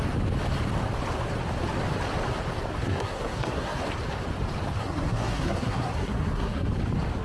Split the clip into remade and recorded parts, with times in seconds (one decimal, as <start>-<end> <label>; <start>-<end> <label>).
0.0-2.8 recorded; 2.8-3.8 remade; 3.8-4.8 recorded; 4.8-6.7 remade; 6.7-7.2 recorded